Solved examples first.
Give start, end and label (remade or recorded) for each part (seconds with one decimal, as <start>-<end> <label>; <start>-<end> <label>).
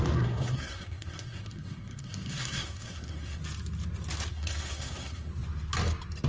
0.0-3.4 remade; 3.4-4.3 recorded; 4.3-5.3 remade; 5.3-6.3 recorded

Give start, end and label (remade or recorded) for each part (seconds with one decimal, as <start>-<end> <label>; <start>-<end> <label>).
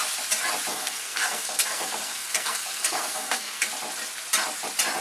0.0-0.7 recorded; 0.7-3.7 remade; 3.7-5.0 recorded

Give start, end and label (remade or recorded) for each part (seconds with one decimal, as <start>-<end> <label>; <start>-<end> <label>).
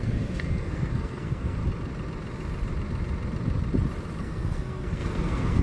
0.0-1.6 remade; 1.6-4.2 recorded; 4.2-5.6 remade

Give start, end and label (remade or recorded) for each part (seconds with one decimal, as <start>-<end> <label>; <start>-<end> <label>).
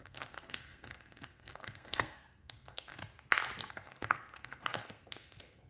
0.0-3.0 remade; 3.0-3.7 recorded; 3.7-5.7 remade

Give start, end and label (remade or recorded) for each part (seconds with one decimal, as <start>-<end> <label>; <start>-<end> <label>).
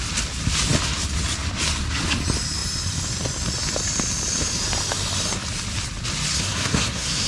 0.0-6.3 recorded; 6.3-7.3 remade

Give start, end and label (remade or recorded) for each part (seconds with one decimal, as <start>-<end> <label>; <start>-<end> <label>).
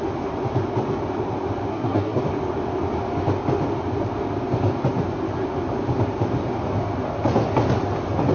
0.0-1.7 recorded; 1.7-2.2 remade; 2.2-8.3 recorded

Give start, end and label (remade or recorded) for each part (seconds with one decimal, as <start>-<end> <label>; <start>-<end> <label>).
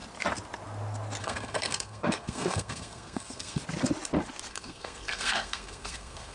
0.0-1.2 recorded; 1.2-3.6 remade; 3.6-4.5 recorded; 4.5-6.3 remade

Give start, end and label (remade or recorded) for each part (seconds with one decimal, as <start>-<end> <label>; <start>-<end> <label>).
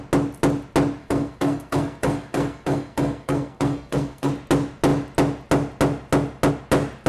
0.0-1.0 recorded; 1.0-4.3 remade; 4.3-7.1 recorded